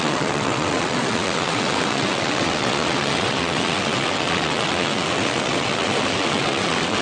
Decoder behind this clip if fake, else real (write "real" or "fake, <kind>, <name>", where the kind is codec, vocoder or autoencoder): fake, vocoder, WaveNeXt